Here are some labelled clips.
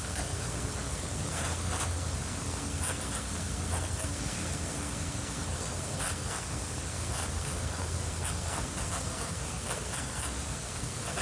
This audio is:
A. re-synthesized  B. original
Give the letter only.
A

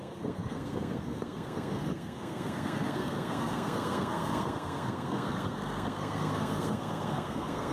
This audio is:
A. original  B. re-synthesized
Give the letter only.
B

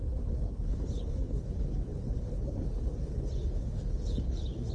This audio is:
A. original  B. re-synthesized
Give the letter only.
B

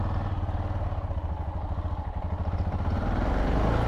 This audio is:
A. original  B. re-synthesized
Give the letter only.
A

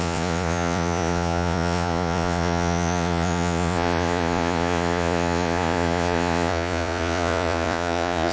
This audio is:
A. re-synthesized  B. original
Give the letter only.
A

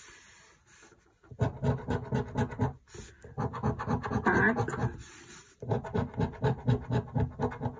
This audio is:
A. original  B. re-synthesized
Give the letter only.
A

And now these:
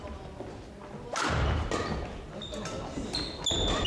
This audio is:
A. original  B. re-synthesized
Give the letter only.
A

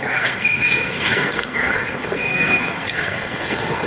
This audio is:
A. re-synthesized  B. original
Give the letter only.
A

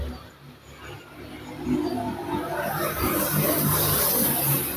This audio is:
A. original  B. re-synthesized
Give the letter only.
A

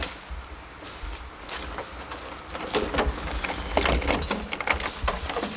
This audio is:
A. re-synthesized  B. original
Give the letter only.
B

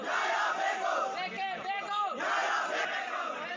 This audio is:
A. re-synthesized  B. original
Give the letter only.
B